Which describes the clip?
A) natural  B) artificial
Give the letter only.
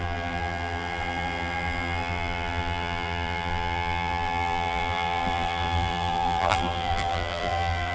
B